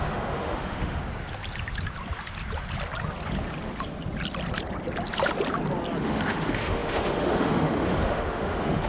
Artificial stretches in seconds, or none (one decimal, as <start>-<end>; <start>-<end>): 0.0-1.0; 6.0-8.9